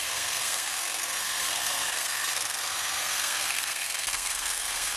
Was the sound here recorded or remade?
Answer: remade